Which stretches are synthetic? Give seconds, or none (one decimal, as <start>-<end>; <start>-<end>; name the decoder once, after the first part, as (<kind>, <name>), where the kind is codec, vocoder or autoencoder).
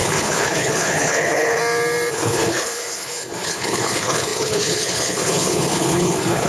0.0-1.6 (codec, HILCodec); 2.1-6.5